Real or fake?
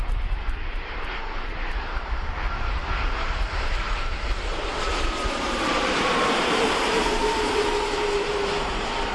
fake